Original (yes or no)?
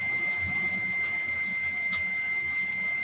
yes